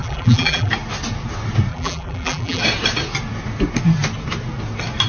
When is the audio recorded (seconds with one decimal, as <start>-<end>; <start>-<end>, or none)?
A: 0.7-1.7; 2.6-5.1